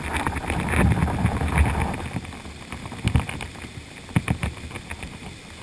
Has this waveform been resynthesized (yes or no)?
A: no